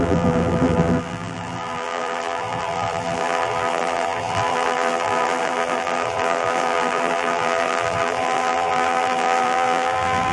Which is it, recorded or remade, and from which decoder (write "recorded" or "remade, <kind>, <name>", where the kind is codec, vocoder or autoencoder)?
remade, vocoder, BigVGAN v2